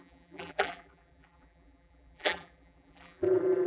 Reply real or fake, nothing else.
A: fake